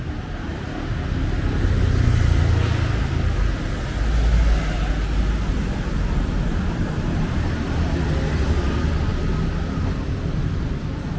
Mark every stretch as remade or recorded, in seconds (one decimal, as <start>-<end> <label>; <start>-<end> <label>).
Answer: 0.0-11.2 recorded